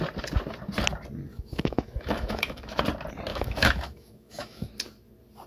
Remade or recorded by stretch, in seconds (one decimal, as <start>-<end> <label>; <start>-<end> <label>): 0.0-1.3 recorded; 1.3-2.8 remade; 2.8-3.3 recorded; 3.3-4.7 remade; 4.7-5.5 recorded